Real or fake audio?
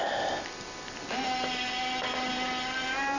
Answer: real